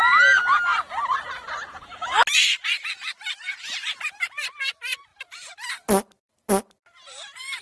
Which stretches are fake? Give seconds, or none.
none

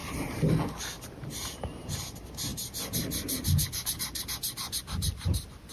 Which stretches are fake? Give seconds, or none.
none

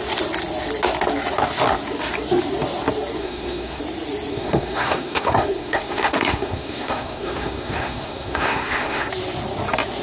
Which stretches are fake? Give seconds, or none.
3.2-3.8 (codec, SNAC); 4.3-9.1

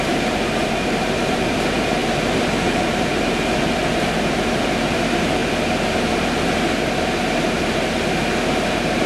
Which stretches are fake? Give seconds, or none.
0.0-5.4 (vocoder, BigVGAN v2); 8.7-9.1

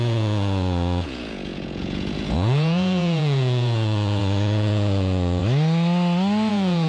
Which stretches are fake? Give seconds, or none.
0.0-5.4 (vocoder, Vocos); 6.5-6.9